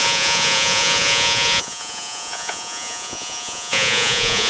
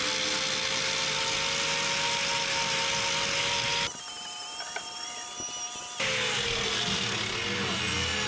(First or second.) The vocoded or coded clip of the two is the first